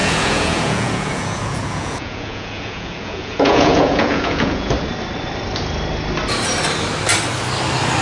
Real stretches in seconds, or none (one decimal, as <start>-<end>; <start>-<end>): 4.7-8.0